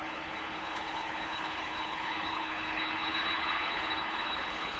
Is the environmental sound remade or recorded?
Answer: remade